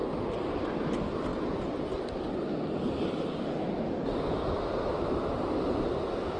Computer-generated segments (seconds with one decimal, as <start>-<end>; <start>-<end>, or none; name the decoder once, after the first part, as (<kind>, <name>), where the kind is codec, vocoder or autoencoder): none